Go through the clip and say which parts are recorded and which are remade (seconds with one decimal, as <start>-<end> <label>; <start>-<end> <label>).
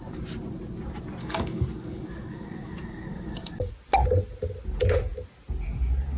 0.0-1.2 recorded; 1.2-3.7 remade; 3.7-6.2 recorded